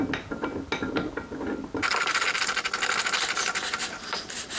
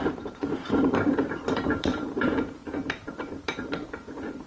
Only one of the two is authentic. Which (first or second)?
first